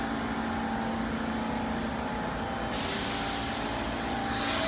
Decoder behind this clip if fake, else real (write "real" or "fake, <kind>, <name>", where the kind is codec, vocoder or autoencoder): real